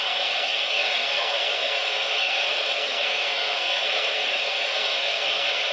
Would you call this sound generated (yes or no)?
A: yes